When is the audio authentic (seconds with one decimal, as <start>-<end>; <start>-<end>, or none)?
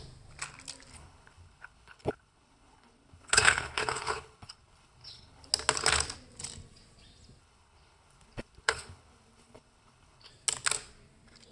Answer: 0.0-0.9; 5.5-7.4; 10.3-11.5